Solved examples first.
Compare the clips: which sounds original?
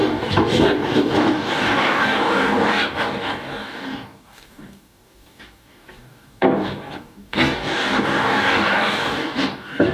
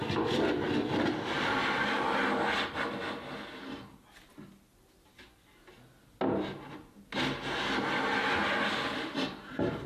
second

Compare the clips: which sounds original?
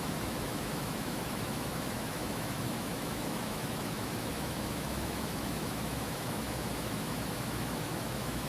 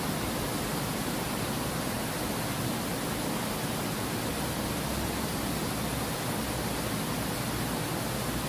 second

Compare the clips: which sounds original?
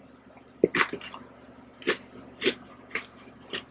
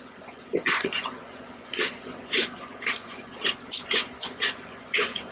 first